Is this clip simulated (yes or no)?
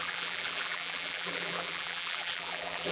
yes